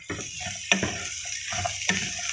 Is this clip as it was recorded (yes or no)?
yes